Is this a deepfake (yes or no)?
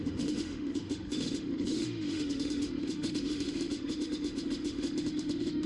yes